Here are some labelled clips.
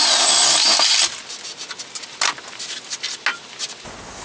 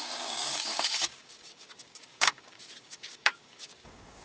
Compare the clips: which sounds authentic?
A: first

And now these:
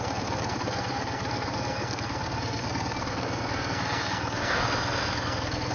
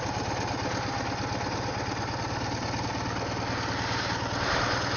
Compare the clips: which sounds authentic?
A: second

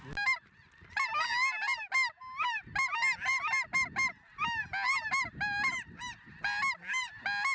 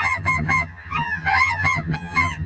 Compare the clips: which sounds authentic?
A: first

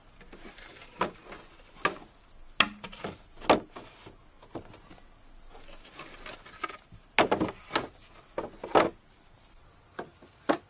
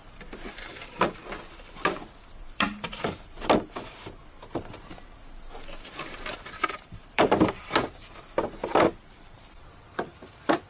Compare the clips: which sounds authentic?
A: first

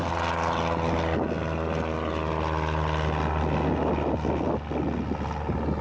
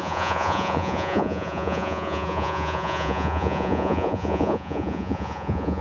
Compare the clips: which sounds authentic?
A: first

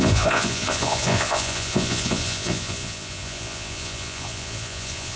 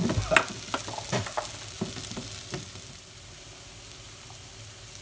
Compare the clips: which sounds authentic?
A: second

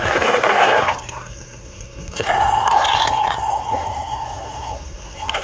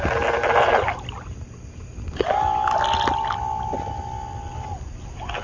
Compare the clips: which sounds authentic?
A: second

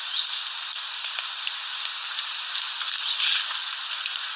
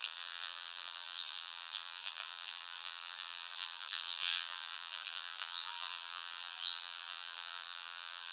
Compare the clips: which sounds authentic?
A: first